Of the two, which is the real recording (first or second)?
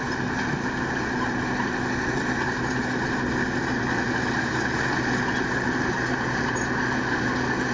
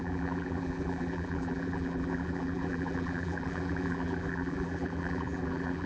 first